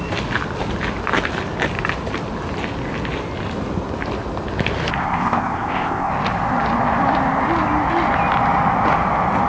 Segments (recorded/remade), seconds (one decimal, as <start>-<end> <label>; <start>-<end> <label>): 0.0-5.0 recorded; 5.0-6.1 remade; 6.1-9.5 recorded